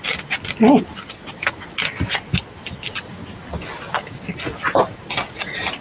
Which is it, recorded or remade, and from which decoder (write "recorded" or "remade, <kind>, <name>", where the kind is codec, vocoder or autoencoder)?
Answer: recorded